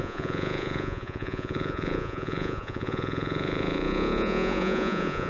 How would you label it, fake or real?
fake